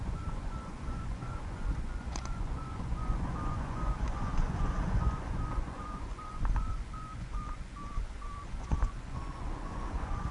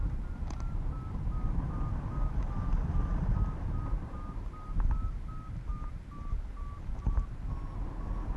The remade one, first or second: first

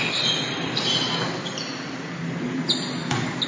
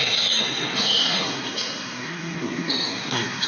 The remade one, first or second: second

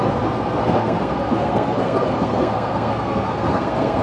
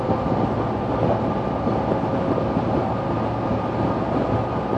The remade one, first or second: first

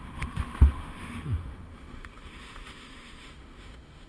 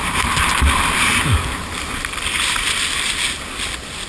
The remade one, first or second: first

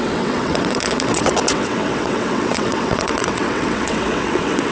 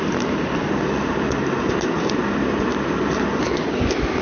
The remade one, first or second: first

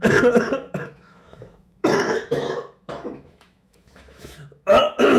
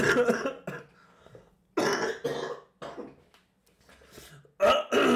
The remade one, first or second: first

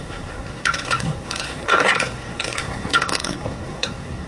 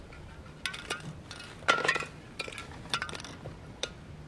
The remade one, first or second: first